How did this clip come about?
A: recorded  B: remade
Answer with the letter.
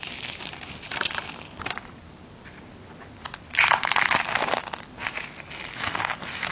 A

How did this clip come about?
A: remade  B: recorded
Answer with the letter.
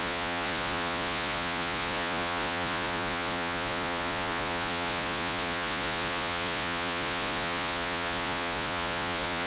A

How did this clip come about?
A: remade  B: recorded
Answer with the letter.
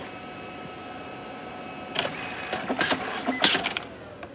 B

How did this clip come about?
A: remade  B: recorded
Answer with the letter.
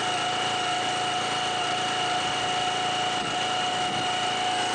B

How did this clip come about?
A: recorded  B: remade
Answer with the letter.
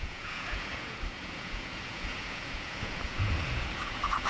B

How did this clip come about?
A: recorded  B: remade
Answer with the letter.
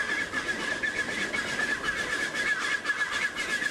A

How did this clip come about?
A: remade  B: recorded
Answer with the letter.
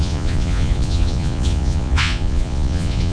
A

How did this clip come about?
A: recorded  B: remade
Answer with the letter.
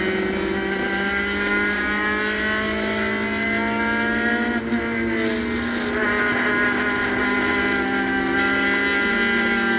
A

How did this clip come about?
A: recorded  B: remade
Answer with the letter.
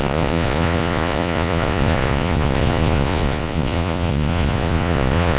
B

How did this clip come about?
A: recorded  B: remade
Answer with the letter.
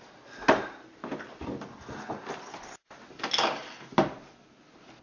A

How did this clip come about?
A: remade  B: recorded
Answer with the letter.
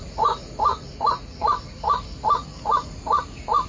A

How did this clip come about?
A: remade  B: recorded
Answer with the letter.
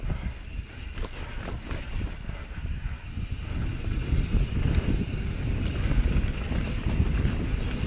B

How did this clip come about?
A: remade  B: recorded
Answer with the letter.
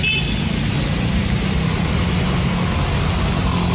B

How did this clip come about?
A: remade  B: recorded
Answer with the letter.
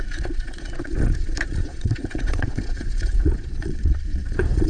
A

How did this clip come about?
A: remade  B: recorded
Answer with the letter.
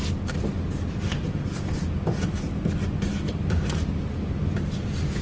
B